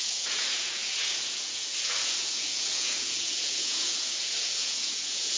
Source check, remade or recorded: remade